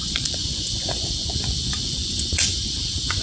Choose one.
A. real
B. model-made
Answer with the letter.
B